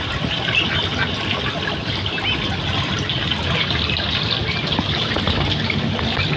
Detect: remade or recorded recorded